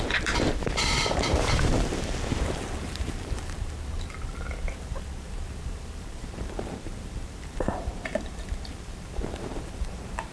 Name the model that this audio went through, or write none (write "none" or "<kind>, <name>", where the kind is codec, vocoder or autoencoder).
vocoder, BigVGAN v2